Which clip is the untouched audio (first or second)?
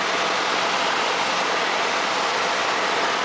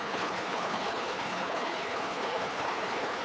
first